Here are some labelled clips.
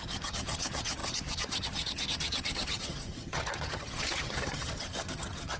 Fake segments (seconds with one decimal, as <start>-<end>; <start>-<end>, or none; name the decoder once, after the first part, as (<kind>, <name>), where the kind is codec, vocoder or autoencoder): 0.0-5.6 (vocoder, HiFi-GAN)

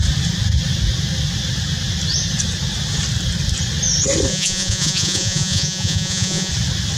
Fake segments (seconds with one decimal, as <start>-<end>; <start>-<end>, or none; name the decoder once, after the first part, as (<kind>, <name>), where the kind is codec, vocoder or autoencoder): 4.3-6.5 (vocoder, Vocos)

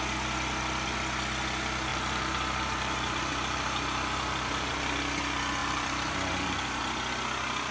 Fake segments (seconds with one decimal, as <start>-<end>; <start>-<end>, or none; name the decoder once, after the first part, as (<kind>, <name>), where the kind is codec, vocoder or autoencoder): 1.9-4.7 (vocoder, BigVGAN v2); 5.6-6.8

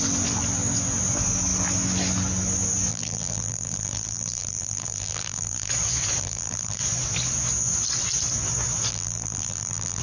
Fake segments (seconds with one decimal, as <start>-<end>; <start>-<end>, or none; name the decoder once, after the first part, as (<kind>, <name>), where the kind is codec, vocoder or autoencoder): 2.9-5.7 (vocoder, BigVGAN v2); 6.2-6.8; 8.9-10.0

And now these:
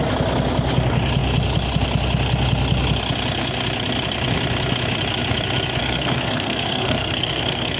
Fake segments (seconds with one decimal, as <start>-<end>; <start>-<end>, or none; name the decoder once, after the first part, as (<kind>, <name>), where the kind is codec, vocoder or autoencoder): 5.8-7.8 (codec, SNAC)